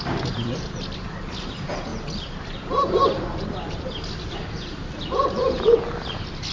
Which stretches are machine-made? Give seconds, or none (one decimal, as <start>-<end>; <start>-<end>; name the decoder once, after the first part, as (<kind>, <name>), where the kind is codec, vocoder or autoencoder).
0.0-6.5 (vocoder, BigVGAN v2)